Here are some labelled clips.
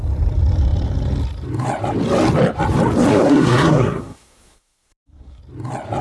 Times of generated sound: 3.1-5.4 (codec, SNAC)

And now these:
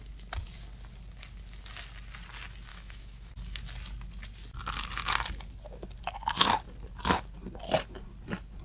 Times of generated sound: 2.7-3.3 (autoencoder, DAC-VAE)

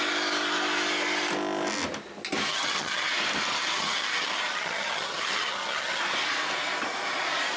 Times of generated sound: 2.5-3.1 (vocoder, HiFi-GAN); 3.5-6.0

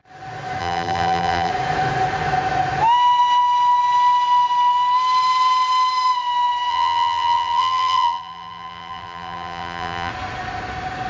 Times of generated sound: 0.6-1.5 (vocoder, BigVGAN v2); 6.7-10.1

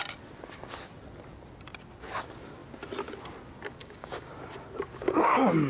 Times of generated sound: 3.8-4.3 (codec, DAC); 4.9-5.7

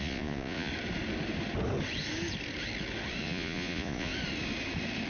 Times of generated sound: 0.0-0.7 (vocoder, Vocos); 3.2-4.1